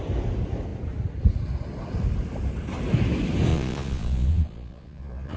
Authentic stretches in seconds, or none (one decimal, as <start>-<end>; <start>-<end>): 0.0-3.5